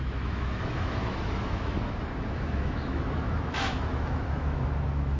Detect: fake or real fake